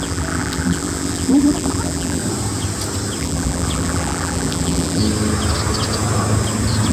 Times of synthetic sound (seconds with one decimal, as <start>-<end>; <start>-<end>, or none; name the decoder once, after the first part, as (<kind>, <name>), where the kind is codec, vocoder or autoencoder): 0.0-2.2 (vocoder, BigVGAN v2); 3.2-5.0